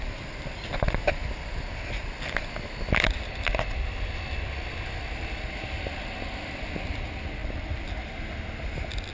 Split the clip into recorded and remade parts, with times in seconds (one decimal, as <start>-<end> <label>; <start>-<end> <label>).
0.0-7.4 recorded; 7.4-8.2 remade; 8.2-9.1 recorded